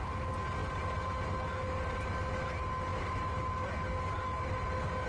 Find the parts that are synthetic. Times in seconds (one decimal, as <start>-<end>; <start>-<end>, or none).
none